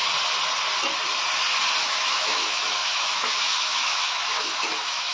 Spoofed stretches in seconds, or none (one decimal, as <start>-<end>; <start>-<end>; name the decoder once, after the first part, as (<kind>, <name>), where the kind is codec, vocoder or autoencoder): 1.8-5.1 (autoencoder, DAC-VAE)